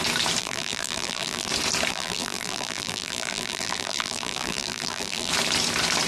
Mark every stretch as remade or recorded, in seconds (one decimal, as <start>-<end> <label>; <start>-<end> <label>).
0.0-0.4 recorded; 0.4-1.5 remade; 1.5-1.9 recorded; 1.9-5.3 remade; 5.3-6.1 recorded